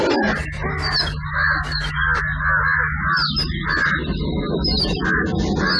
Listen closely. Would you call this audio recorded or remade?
recorded